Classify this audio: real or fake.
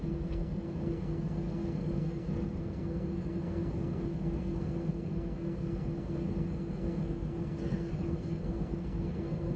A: fake